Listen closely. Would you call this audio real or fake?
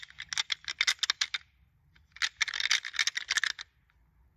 real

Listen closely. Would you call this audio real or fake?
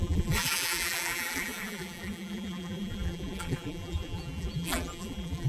fake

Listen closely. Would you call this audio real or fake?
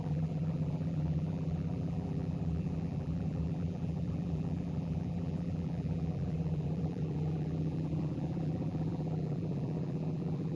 fake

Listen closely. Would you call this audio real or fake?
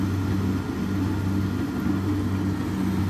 real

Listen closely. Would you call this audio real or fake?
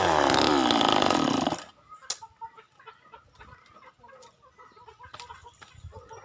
real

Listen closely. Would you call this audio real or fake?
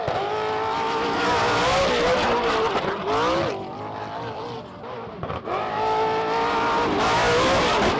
fake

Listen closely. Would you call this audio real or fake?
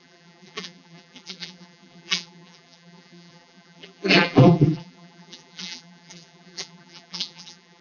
fake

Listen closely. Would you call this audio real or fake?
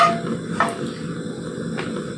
real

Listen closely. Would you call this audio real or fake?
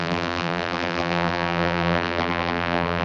fake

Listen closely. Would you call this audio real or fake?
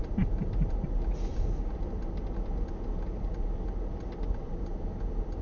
real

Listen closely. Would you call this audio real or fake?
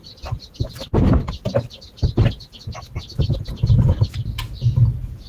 real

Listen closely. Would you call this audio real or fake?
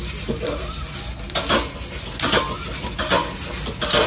real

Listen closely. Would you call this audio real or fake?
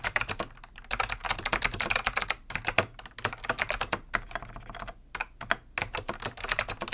real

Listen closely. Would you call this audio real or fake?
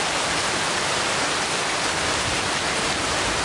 fake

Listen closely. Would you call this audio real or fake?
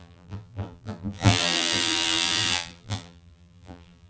fake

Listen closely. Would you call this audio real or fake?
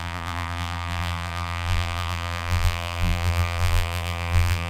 fake